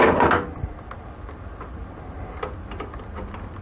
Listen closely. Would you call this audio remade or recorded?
recorded